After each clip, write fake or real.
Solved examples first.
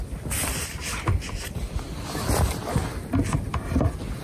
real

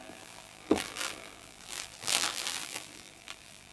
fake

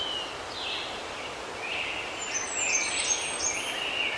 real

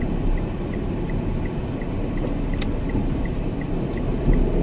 real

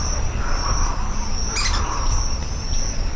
real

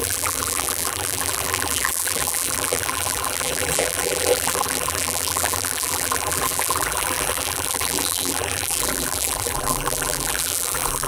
fake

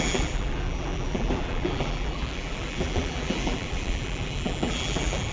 fake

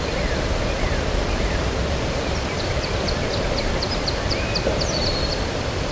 fake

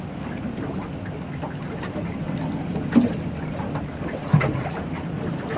real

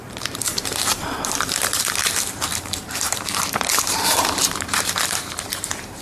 fake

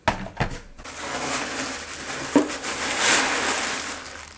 real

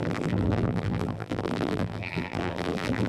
fake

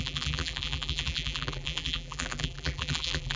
fake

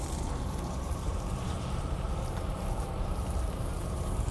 fake